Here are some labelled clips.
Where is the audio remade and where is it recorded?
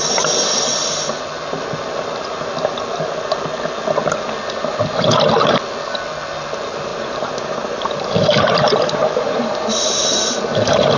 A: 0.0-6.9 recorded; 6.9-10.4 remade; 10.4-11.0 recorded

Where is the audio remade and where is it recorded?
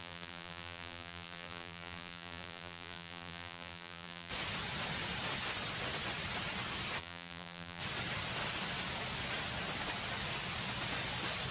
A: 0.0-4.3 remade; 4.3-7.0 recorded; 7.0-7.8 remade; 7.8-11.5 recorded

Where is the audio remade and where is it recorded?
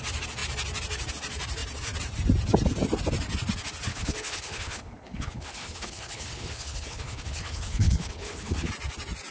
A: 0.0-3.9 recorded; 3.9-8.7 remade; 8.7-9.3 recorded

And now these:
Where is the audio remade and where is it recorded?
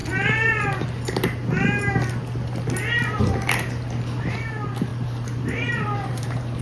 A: 0.0-4.9 recorded; 4.9-6.6 remade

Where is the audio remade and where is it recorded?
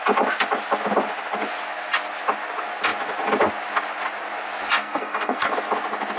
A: 0.0-4.8 recorded; 4.8-5.5 remade; 5.5-6.2 recorded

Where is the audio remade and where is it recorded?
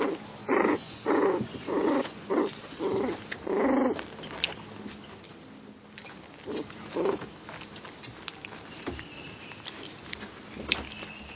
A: 0.0-0.4 recorded; 0.4-2.4 remade; 2.4-11.4 recorded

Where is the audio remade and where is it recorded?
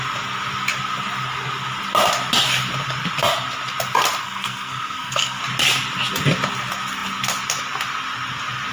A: 0.0-4.2 recorded; 4.2-5.4 remade; 5.4-8.7 recorded